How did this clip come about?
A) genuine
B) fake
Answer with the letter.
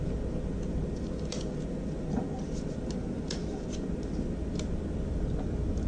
A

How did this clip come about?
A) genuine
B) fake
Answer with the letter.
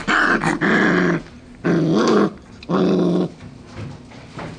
A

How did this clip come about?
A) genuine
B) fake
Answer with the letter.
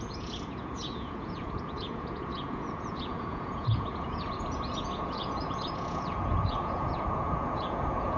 B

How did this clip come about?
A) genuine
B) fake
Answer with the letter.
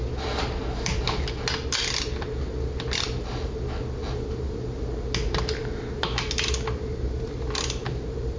A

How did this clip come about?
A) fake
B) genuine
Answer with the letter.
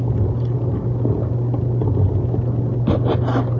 B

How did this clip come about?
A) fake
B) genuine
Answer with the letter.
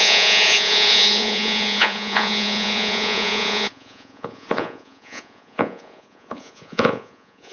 A